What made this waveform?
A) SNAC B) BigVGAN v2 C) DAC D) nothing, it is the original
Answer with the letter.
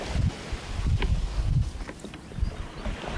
D